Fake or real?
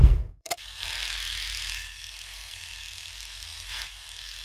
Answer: fake